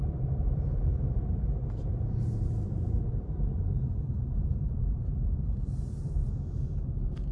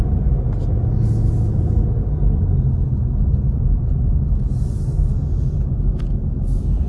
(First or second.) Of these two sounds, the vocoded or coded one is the first